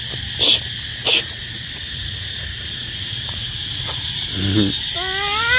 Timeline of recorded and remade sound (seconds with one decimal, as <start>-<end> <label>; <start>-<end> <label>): 0.0-0.9 recorded; 0.9-4.3 remade; 4.3-5.6 recorded

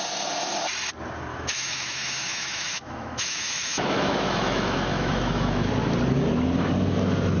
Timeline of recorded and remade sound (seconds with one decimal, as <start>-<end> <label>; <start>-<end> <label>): 0.0-1.3 recorded; 1.3-5.7 remade; 5.7-7.4 recorded

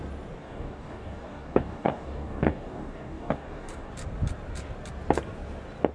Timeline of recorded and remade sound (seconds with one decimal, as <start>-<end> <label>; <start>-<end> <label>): 0.0-0.4 recorded; 0.4-3.9 remade; 3.9-5.9 recorded

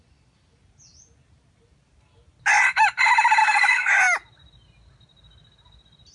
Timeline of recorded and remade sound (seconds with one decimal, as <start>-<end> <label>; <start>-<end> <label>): 0.0-3.4 recorded; 3.4-3.9 remade; 3.9-6.1 recorded